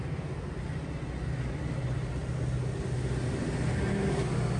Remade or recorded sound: recorded